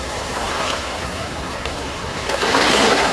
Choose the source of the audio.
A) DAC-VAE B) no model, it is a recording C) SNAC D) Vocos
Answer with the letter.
C